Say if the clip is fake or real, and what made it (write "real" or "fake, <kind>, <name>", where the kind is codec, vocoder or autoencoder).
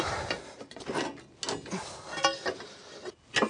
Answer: real